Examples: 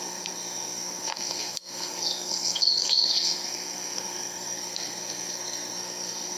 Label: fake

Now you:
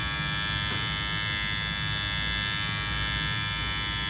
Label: real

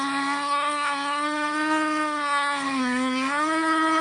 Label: fake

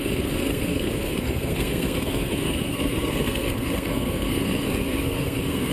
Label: fake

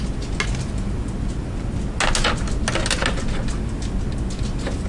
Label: real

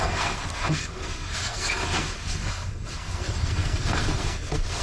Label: fake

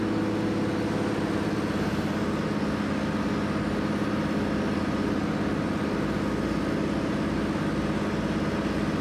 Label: real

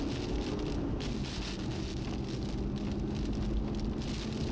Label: real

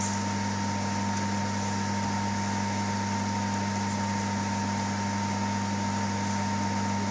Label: real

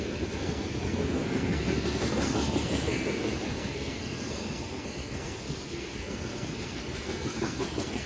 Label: fake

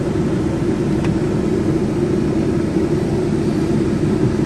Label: real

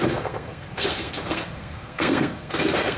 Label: fake